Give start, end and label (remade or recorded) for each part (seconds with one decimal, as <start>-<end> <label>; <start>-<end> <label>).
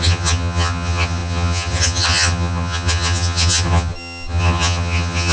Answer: 0.0-5.3 remade